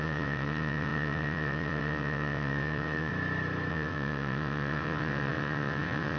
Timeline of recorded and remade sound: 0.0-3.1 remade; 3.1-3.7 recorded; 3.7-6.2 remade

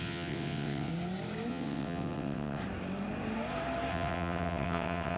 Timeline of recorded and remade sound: 0.0-0.9 remade; 0.9-1.5 recorded; 1.5-2.6 remade; 2.6-3.9 recorded; 3.9-5.2 remade

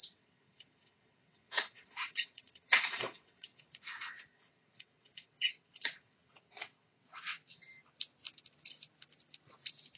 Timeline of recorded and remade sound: 0.0-3.6 remade; 3.6-4.3 recorded; 4.3-7.6 remade; 7.6-10.0 recorded

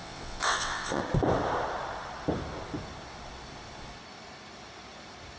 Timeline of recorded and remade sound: 0.0-1.0 remade; 1.0-5.4 recorded

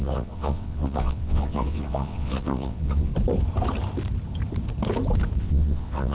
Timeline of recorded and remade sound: 0.0-3.1 remade; 3.1-5.4 recorded; 5.4-6.1 remade